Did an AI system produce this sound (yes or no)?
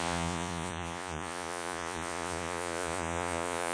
yes